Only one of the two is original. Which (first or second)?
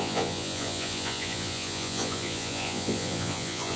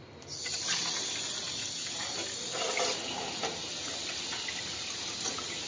second